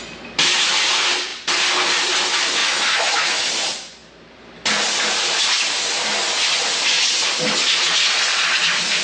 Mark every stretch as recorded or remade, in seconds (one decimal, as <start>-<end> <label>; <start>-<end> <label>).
0.0-2.6 recorded; 2.6-3.5 remade; 3.5-9.0 recorded

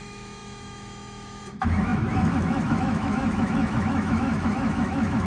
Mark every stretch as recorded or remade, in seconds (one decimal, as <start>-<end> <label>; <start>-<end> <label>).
0.0-5.3 remade

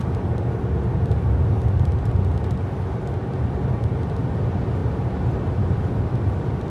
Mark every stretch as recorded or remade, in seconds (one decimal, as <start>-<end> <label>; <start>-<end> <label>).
0.0-6.7 recorded